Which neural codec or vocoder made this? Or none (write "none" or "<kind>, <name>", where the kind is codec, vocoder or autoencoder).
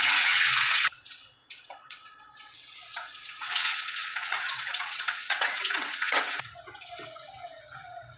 vocoder, WaveNeXt